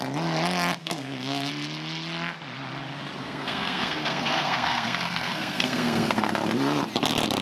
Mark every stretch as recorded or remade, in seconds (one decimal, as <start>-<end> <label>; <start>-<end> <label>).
0.0-0.8 recorded; 0.8-1.5 remade; 1.5-3.2 recorded; 3.2-6.3 remade; 6.3-7.4 recorded